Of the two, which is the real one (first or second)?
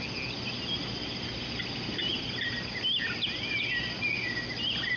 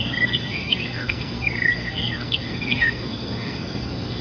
first